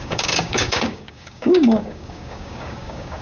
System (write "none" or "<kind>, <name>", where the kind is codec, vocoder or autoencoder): codec, DAC